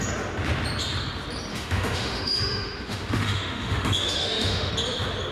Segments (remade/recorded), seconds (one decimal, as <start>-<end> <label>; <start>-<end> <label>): 0.0-1.5 recorded; 1.5-4.7 remade; 4.7-5.3 recorded